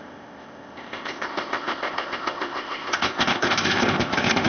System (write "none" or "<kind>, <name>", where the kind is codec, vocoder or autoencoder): codec, ZipCodec